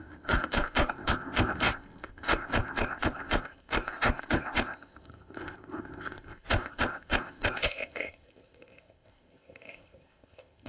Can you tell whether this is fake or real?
fake